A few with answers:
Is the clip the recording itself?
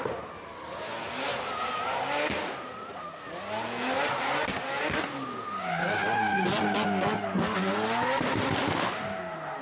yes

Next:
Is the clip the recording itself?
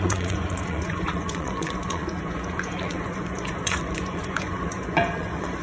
no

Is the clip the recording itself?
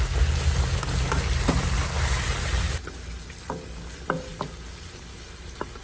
yes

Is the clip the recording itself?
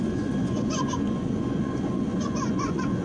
no